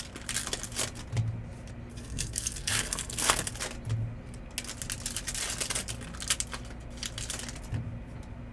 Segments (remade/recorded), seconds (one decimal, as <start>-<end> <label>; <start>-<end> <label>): 0.0-1.9 recorded; 1.9-3.5 remade; 3.5-8.5 recorded